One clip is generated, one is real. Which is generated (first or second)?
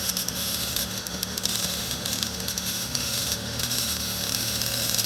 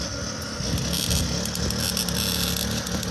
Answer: first